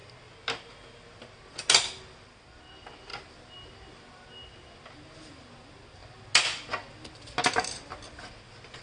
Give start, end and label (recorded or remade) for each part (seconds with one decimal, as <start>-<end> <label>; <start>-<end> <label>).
0.0-8.8 recorded